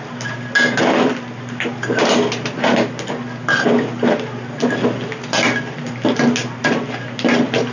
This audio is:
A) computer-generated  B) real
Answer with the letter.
B